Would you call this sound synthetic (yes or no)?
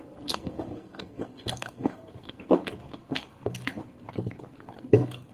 yes